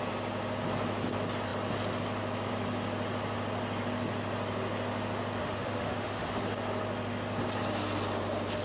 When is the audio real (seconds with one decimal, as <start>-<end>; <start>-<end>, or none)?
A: 0.0-5.4; 6.4-8.6